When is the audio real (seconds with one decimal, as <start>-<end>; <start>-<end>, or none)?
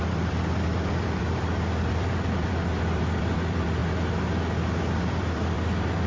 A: 3.8-4.8